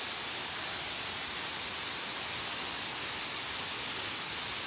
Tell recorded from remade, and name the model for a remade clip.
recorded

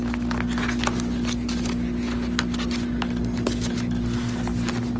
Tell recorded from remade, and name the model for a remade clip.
recorded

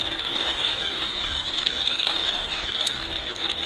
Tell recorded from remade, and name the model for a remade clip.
remade, codec, DAC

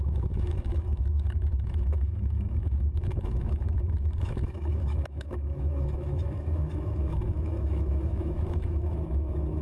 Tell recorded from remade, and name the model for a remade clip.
remade, autoencoder, DAC-VAE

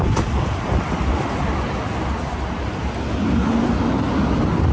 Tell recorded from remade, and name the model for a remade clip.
recorded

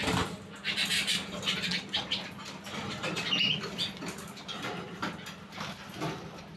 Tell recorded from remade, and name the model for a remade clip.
recorded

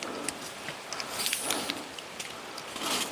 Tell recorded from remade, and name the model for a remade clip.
recorded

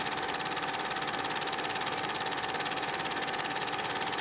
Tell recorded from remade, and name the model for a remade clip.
remade, vocoder, BigVGAN v2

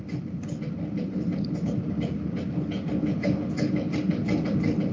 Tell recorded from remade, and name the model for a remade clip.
recorded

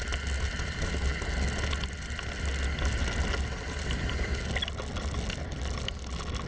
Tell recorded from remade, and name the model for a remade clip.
recorded